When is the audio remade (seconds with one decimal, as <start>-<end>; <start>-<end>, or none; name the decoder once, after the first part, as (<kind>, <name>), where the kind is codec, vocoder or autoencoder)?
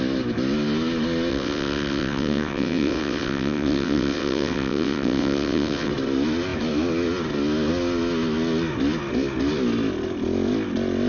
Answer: 1.3-5.9 (vocoder, WaveNeXt)